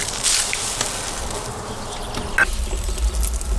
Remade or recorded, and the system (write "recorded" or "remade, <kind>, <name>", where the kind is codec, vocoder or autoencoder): recorded